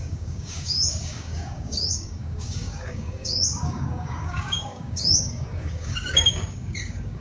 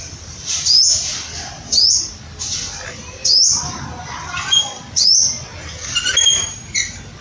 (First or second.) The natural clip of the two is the second